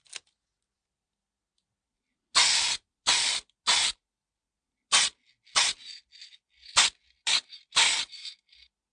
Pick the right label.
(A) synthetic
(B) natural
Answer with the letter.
B